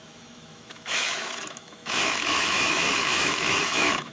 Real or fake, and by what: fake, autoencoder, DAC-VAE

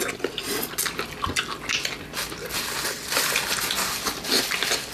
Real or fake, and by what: real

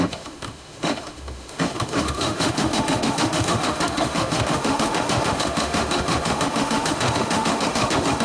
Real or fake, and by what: fake, autoencoder, DAC-VAE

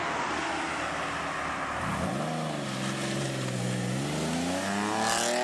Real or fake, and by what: real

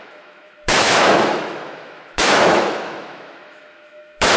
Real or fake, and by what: fake, autoencoder, DAC-VAE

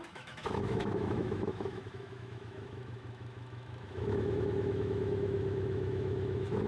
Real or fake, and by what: fake, autoencoder, DAC-VAE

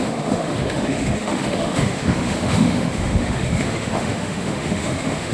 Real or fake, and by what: fake, autoencoder, DAC-VAE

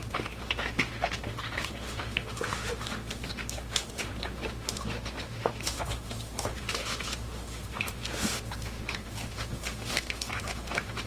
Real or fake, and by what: fake, autoencoder, DAC-VAE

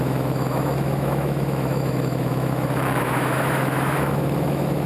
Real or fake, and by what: fake, autoencoder, DAC-VAE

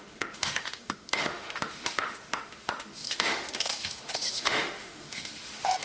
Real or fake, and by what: fake, autoencoder, DAC-VAE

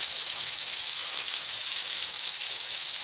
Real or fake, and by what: fake, autoencoder, DAC-VAE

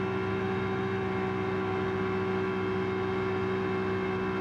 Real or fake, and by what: real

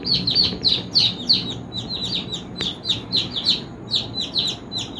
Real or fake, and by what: real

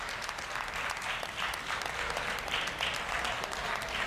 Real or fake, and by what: real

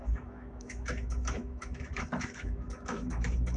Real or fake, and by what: fake, autoencoder, DAC-VAE